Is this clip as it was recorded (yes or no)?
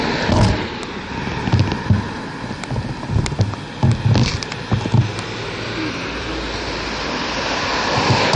yes